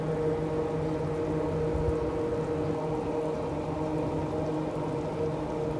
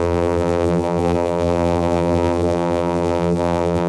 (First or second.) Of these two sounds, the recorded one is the first